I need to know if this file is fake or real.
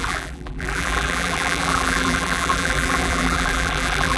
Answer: fake